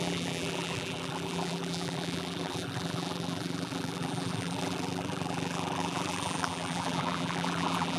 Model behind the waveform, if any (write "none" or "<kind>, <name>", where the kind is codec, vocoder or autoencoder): vocoder, BigVGAN v2